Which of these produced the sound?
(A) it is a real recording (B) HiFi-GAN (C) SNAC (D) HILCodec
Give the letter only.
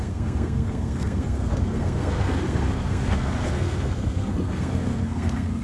C